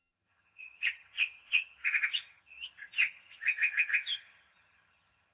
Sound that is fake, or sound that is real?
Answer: fake